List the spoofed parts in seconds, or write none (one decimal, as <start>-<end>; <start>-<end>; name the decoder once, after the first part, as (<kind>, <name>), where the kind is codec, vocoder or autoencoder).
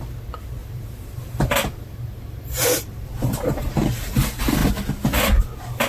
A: 0.6-4.1 (vocoder, BigVGAN v2)